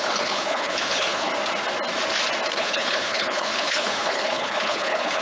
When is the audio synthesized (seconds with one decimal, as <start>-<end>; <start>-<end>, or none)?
0.0-1.3; 2.5-5.2